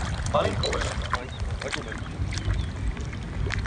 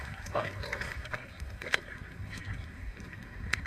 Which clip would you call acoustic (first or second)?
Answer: first